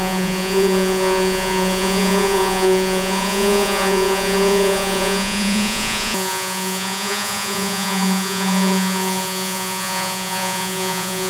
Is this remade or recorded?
remade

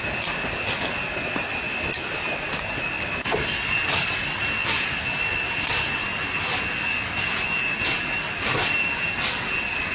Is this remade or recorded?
recorded